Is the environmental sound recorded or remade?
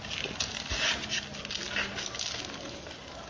recorded